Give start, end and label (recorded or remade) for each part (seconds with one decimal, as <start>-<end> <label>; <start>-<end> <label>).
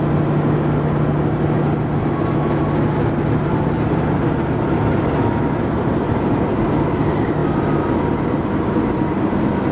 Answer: 0.0-9.7 recorded